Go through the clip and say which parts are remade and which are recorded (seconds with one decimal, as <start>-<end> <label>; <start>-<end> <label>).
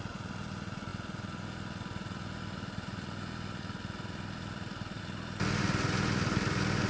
0.0-6.9 recorded